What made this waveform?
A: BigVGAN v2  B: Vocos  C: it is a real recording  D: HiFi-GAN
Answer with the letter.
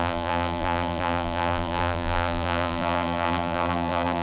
A